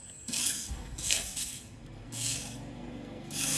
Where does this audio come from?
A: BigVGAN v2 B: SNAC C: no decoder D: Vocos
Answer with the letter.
B